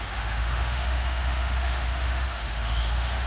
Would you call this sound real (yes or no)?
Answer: no